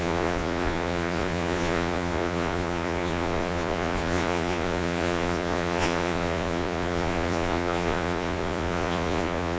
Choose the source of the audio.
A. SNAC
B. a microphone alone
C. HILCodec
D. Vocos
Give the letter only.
D